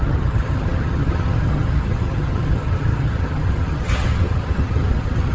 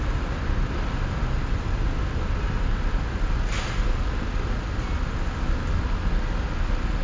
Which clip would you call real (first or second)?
second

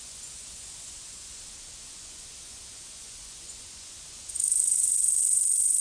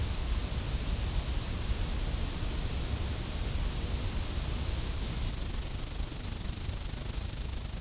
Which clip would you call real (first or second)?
second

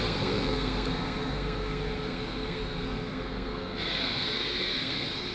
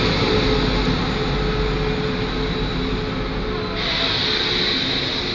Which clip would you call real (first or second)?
second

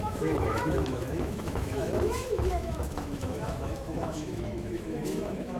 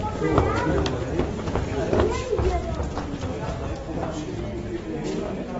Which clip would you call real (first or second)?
second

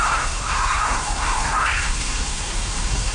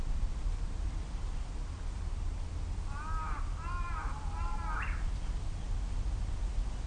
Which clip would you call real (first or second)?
second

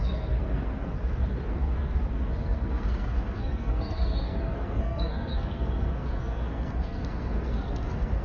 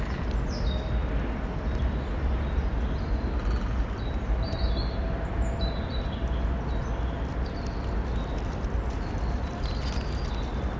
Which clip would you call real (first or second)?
second